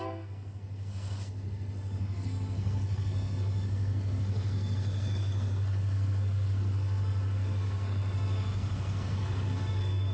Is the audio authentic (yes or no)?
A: no